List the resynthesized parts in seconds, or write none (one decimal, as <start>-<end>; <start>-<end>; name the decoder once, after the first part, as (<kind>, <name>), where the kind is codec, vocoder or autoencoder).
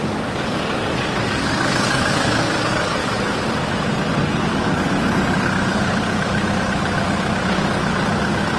0.0-3.0 (codec, DAC); 4.1-8.6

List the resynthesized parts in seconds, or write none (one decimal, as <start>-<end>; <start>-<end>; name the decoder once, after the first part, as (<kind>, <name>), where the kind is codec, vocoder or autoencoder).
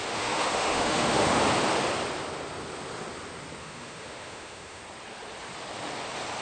0.0-1.4 (autoencoder, DAC-VAE); 3.6-4.8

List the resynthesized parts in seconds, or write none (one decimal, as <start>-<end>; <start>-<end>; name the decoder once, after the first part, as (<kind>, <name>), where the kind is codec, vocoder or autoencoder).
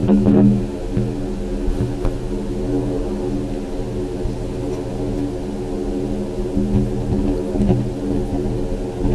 0.0-0.6 (autoencoder, DAC-VAE)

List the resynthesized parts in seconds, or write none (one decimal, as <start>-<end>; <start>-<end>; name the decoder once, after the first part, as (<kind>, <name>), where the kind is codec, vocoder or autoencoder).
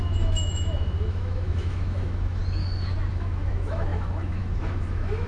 0.0-2.4 (autoencoder, DAC-VAE); 3.1-5.3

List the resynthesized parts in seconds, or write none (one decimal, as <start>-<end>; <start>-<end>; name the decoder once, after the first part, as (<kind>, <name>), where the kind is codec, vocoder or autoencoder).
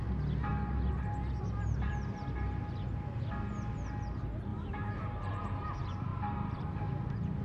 4.5-5.0 (autoencoder, DAC-VAE)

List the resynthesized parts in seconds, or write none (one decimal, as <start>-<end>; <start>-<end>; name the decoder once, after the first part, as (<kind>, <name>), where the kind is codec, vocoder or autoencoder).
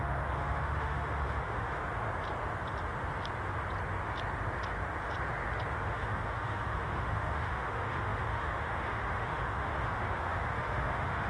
0.0-1.8 (autoencoder, DAC-VAE); 5.8-11.3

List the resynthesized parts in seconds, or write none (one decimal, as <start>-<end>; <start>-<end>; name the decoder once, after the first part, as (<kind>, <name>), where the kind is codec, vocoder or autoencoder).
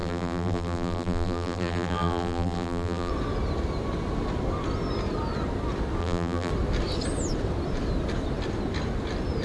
0.0-3.1 (vocoder, BigVGAN v2); 6.0-6.5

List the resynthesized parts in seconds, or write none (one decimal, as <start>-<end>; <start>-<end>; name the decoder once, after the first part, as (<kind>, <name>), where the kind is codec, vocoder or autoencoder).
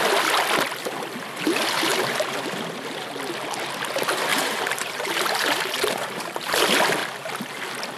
4.3-6.6 (vocoder, BigVGAN v2)